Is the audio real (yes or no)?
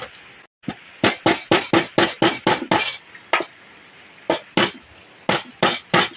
yes